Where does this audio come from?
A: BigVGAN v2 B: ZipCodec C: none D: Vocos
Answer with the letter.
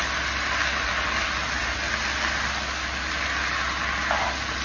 C